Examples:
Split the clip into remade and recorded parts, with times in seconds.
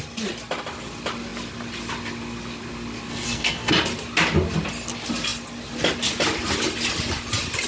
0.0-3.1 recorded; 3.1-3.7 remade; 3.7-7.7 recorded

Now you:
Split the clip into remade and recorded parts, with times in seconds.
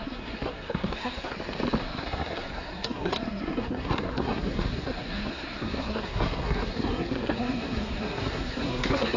0.0-1.3 remade; 1.3-1.8 recorded; 1.8-9.2 remade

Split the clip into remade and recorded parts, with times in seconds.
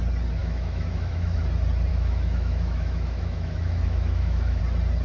0.0-0.4 recorded; 0.4-1.4 remade; 1.4-1.9 recorded; 1.9-4.6 remade; 4.6-5.0 recorded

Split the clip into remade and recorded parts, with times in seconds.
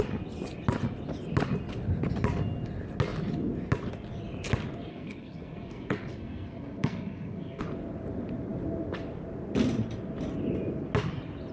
0.0-4.9 recorded; 4.9-7.6 remade; 7.6-11.5 recorded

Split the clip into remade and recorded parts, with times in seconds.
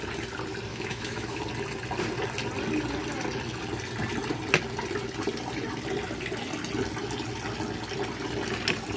0.0-0.7 recorded; 0.7-1.4 remade; 1.4-9.0 recorded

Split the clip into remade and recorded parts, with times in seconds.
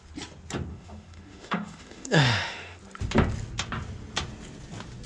0.0-0.7 recorded; 0.7-2.8 remade; 2.8-5.1 recorded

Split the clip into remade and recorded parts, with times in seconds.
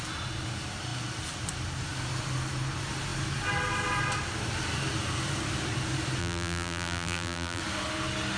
0.0-6.2 recorded; 6.2-7.6 remade; 7.6-8.4 recorded